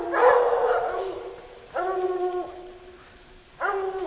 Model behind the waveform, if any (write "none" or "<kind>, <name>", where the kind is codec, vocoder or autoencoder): none